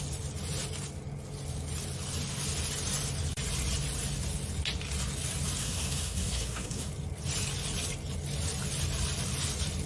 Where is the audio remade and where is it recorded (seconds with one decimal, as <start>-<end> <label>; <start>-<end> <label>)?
0.0-5.6 recorded; 5.6-6.9 remade; 6.9-9.9 recorded